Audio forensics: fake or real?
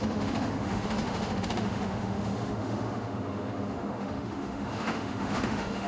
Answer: fake